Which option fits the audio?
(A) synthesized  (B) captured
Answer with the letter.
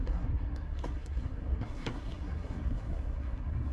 A